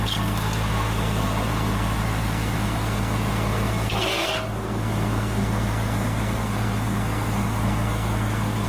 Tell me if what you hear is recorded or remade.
remade